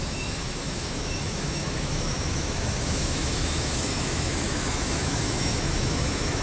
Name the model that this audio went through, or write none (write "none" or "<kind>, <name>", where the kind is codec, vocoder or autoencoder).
autoencoder, DAC-VAE